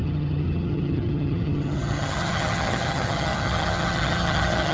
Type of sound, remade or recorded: remade